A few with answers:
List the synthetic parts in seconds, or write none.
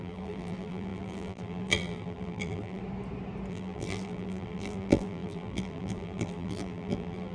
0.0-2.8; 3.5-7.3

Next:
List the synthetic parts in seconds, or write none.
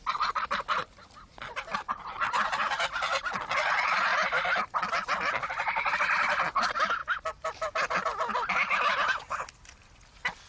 none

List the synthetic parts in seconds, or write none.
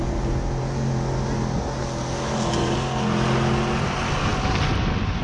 none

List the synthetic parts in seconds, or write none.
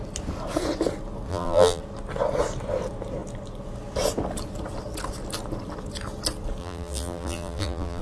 1.3-1.8; 6.6-8.0